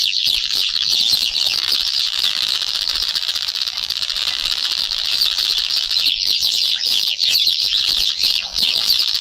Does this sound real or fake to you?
fake